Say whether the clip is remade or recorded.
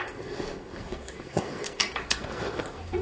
remade